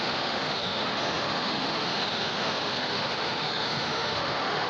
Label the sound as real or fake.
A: fake